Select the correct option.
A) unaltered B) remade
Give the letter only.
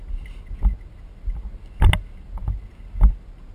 A